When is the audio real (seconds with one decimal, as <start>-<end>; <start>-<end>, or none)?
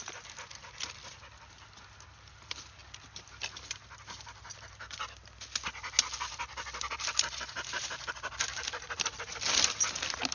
0.0-10.3